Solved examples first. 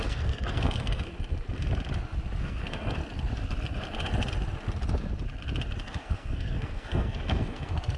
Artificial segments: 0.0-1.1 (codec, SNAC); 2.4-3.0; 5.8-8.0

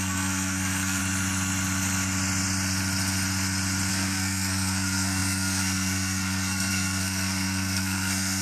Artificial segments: 0.0-1.0 (codec, SNAC); 3.9-8.4

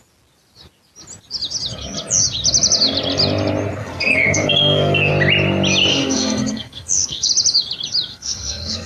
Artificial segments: 3.8-5.1 (codec, SNAC); 5.9-7.3; 8.1-8.9

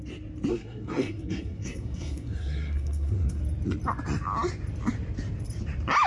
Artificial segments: 0.5-3.4 (codec, SNAC)